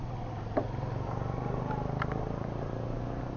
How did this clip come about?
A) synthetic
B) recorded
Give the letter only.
B